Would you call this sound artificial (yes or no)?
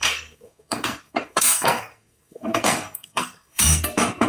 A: yes